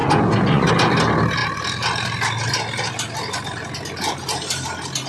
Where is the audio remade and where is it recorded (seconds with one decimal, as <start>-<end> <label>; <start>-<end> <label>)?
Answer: 0.0-0.7 remade; 0.7-5.1 recorded